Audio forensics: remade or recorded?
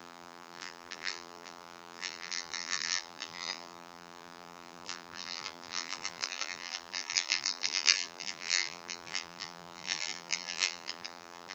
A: remade